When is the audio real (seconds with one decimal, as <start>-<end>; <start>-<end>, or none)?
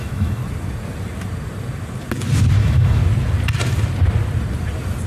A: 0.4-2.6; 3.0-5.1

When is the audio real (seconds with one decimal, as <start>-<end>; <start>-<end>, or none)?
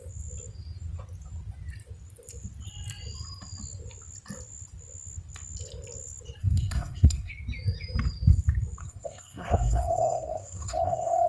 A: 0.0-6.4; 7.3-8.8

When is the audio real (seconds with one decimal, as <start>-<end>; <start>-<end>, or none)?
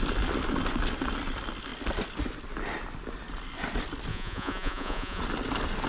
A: 0.0-4.1; 5.2-5.9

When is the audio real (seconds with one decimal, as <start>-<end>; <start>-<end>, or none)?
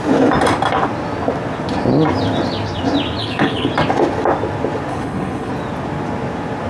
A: 0.0-3.2; 3.7-4.9; 5.5-6.7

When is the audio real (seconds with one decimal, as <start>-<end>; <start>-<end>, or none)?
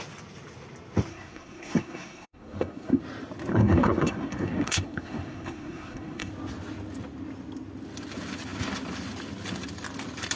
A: 0.0-1.1; 3.0-3.5; 6.3-10.4